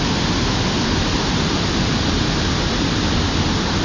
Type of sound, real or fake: real